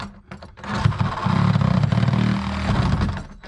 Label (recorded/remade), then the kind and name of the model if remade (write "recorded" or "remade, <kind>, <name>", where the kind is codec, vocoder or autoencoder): recorded